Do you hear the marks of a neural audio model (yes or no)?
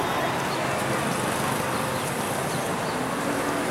no